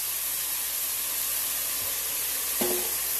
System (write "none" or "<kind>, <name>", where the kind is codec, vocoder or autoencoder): none